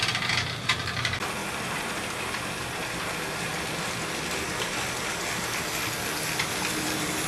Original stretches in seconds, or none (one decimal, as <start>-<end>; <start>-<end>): 0.0-7.3